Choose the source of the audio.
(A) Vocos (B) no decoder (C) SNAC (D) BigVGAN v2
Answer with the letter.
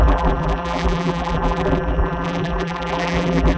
D